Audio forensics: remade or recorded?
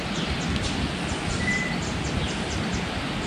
recorded